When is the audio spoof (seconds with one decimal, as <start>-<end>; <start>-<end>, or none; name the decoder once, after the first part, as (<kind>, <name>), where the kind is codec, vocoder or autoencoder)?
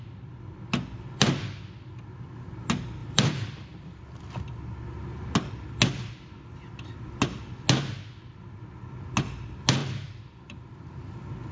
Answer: 3.0-4.0 (vocoder, BigVGAN v2); 9.8-10.9